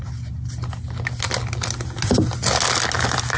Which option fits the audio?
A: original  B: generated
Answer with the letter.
A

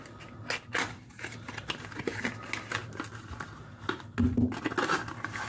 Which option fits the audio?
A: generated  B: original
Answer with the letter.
B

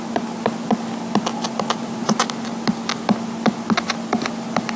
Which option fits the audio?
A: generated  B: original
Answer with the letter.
B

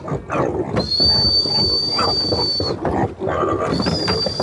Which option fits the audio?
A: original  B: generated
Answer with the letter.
A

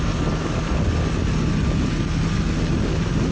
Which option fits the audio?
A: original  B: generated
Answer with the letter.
A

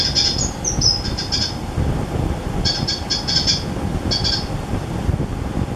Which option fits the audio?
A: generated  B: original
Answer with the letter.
B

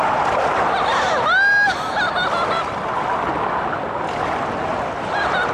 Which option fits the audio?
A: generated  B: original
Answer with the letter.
B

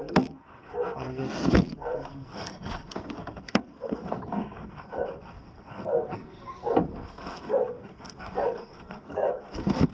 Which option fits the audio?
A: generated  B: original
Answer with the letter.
A